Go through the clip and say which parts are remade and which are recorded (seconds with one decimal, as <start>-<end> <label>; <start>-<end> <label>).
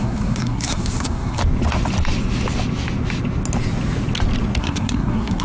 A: 0.0-1.4 remade; 1.4-4.6 recorded; 4.6-5.4 remade